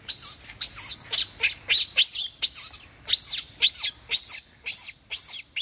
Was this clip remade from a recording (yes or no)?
no